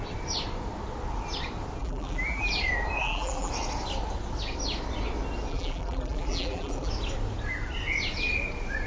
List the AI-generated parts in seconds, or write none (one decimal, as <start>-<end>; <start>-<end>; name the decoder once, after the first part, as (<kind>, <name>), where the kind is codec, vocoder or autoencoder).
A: 1.8-2.5 (vocoder, BigVGAN v2); 3.0-3.5; 5.5-6.9